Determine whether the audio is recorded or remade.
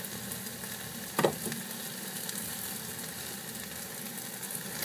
recorded